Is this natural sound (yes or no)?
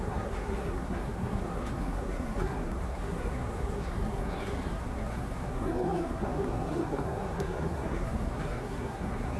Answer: no